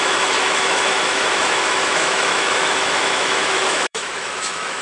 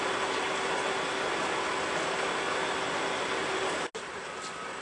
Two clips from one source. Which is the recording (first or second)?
second